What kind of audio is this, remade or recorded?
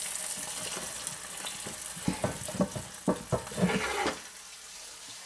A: recorded